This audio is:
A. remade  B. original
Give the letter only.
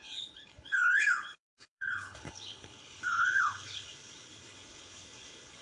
A